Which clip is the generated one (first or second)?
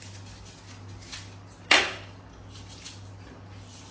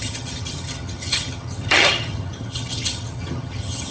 second